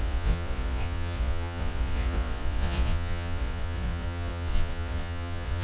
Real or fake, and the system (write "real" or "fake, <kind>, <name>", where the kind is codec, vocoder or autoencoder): fake, vocoder, Vocos